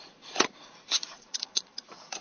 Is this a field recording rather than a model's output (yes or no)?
no